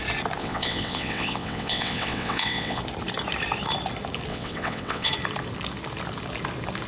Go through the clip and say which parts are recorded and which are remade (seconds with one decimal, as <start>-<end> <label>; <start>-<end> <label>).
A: 0.0-0.4 recorded; 0.4-2.8 remade; 2.8-4.3 recorded; 4.3-5.1 remade; 5.1-6.9 recorded